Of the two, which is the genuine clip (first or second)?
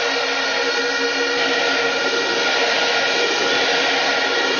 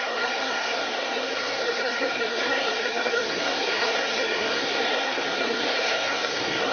first